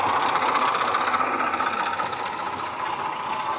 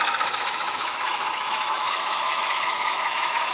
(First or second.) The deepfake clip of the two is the second